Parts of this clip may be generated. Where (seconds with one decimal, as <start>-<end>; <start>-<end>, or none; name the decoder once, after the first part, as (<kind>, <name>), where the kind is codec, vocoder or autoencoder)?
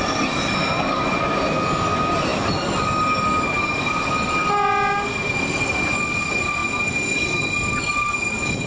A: none